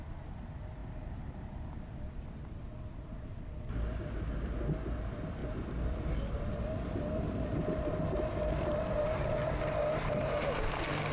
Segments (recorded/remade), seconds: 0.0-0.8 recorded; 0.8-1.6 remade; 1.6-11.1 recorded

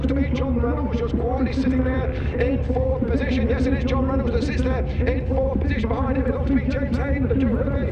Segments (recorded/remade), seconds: 0.0-1.6 recorded; 1.6-2.5 remade; 2.5-3.0 recorded; 3.0-3.5 remade; 3.5-5.3 recorded; 5.3-6.8 remade; 6.8-7.9 recorded

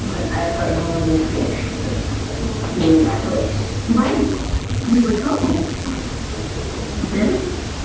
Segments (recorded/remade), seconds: 0.0-4.3 recorded; 4.3-6.0 remade; 6.0-7.8 recorded

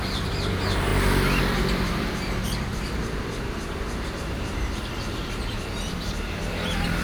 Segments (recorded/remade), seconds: 0.0-0.9 remade; 0.9-1.4 recorded; 1.4-7.0 remade

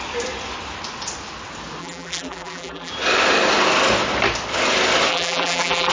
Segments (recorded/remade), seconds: 0.0-1.8 recorded; 1.8-2.9 remade; 2.9-5.1 recorded; 5.1-5.9 remade